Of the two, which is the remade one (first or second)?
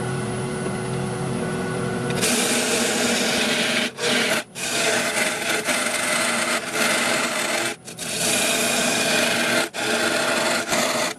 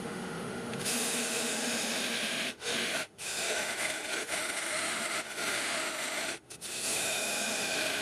second